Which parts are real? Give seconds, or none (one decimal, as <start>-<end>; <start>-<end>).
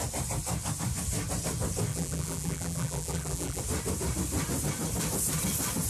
0.0-1.9; 3.6-5.9